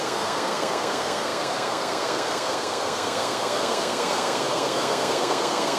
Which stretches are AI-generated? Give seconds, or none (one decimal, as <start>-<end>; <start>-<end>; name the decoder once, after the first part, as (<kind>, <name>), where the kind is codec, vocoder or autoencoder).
0.0-5.8 (codec, SNAC)